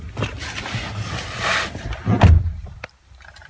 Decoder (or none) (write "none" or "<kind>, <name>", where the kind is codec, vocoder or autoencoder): none